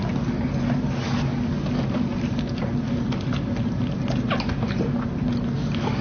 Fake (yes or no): no